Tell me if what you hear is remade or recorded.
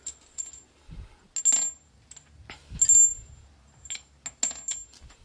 recorded